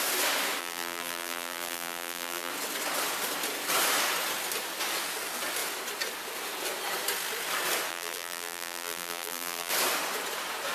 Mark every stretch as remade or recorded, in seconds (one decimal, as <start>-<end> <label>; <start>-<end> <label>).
0.0-0.6 recorded; 0.6-2.5 remade; 2.5-7.9 recorded; 7.9-9.7 remade; 9.7-10.7 recorded